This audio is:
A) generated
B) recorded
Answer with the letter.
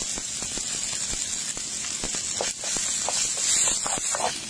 B